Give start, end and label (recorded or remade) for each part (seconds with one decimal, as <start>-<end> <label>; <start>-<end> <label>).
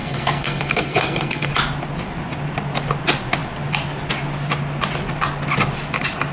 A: 0.0-1.5 remade; 1.5-6.3 recorded